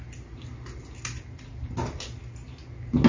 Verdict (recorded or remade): recorded